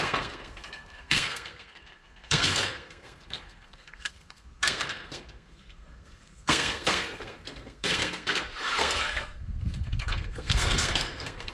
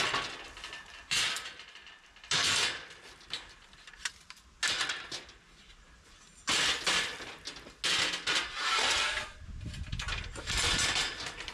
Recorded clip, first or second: second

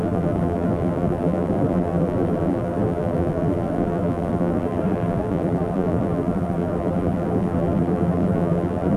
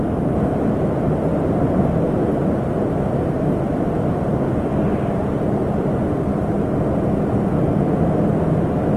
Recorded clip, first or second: second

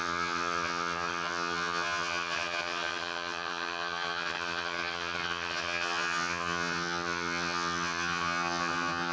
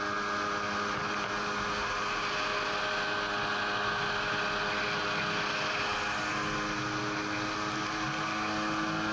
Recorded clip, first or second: second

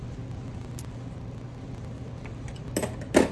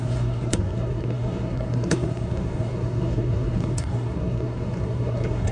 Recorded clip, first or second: first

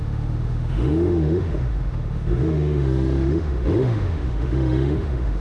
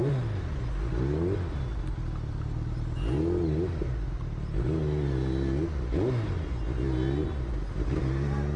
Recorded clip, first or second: second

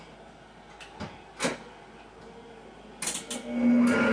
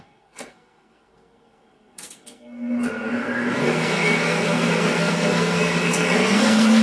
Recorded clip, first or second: first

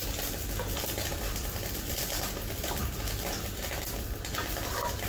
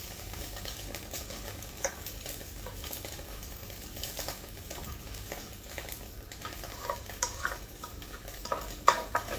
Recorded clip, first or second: first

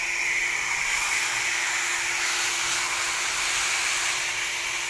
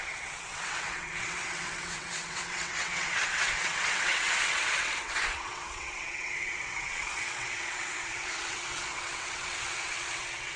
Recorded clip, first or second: first